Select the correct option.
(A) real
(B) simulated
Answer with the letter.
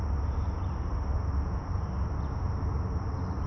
A